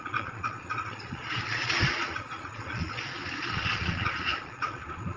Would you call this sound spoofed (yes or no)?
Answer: yes